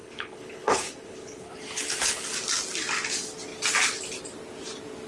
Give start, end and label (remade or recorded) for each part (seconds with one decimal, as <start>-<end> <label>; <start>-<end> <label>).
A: 0.0-1.5 remade; 1.5-5.1 recorded

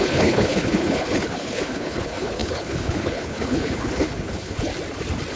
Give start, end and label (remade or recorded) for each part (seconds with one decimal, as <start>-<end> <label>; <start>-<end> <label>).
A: 0.0-4.7 remade; 4.7-5.4 recorded

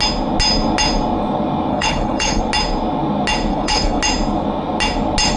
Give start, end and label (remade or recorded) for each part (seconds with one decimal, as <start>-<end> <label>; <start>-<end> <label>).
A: 0.0-1.7 recorded; 1.7-2.4 remade; 2.4-3.5 recorded; 3.5-4.0 remade; 4.0-5.4 recorded

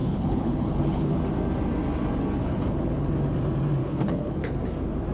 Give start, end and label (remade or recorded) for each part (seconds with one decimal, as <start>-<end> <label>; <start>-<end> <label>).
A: 0.0-1.2 remade; 1.2-2.4 recorded; 2.4-3.1 remade; 3.1-3.8 recorded; 3.8-4.6 remade; 4.6-5.1 recorded

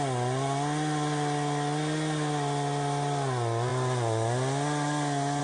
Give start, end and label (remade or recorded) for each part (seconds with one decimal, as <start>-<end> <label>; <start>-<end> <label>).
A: 0.0-5.4 recorded

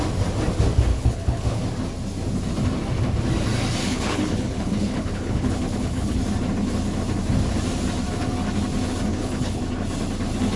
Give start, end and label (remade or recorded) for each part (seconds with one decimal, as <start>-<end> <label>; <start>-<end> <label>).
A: 0.0-0.9 recorded; 0.9-1.6 remade; 1.6-3.8 recorded; 3.8-6.2 remade; 6.2-9.1 recorded; 9.1-9.6 remade; 9.6-10.6 recorded

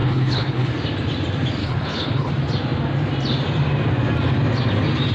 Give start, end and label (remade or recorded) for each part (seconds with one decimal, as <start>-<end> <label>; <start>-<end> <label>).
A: 0.0-0.7 remade; 0.7-1.6 recorded; 1.6-2.3 remade; 2.3-5.1 recorded